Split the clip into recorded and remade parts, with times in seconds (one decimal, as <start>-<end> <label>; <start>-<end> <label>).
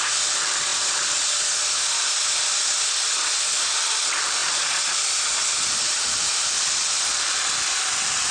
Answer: 0.0-8.3 recorded